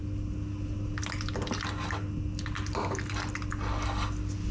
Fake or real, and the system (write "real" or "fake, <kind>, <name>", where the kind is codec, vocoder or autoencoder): real